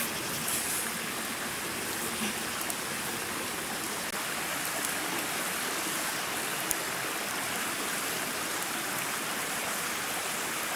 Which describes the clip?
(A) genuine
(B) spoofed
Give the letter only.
A